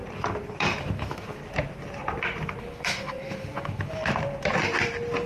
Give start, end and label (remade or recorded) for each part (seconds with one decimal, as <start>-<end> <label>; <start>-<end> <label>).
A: 0.0-0.8 recorded; 0.8-1.4 remade; 1.4-2.6 recorded; 2.6-4.0 remade; 4.0-5.3 recorded